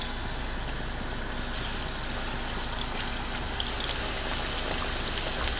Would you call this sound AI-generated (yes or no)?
no